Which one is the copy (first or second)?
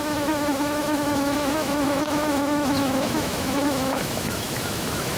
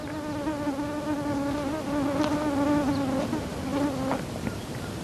first